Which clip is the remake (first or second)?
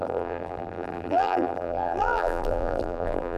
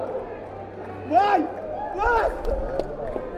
first